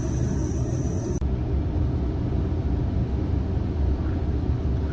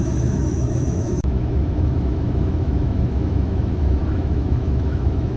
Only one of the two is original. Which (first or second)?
first